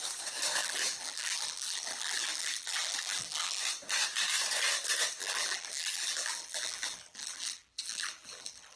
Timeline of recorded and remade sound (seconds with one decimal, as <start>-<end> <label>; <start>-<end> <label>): 0.0-0.6 recorded; 0.6-3.6 remade; 3.6-5.2 recorded; 5.2-8.8 remade